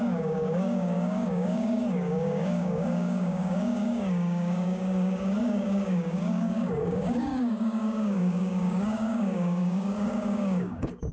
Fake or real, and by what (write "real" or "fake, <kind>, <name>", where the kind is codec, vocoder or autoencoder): fake, codec, DAC